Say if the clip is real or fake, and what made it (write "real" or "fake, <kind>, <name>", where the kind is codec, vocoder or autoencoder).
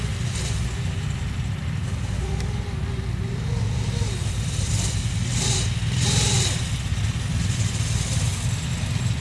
real